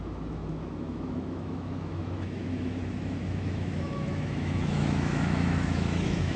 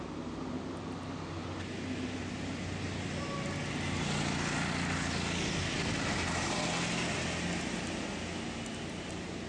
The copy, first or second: first